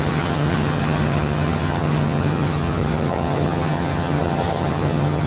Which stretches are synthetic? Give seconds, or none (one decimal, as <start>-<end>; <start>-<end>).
0.0-5.3